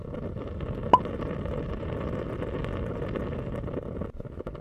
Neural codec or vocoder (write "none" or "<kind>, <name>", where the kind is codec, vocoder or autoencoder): none